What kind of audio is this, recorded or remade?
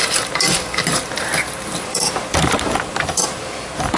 remade